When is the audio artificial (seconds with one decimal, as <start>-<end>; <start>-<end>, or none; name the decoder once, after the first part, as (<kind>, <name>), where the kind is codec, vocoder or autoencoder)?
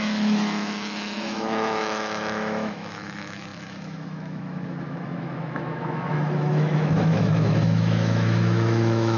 0.0-9.2 (autoencoder, DAC-VAE)